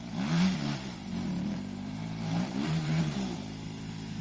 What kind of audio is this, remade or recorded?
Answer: remade